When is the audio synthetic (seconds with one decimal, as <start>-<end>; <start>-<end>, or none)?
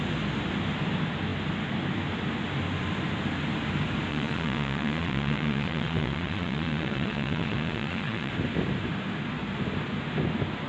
4.1-8.3